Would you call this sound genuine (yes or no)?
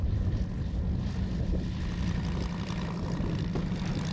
yes